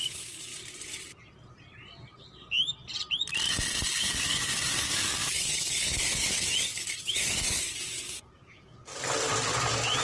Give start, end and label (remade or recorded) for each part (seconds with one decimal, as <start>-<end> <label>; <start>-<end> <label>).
0.0-0.5 remade; 0.5-4.0 recorded; 4.0-8.9 remade; 8.9-10.0 recorded